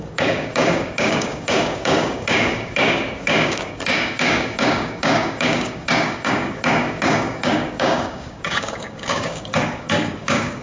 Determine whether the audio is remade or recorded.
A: remade